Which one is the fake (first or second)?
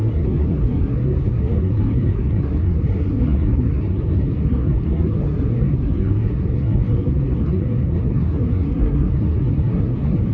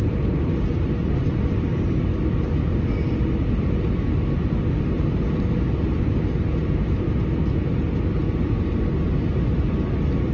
first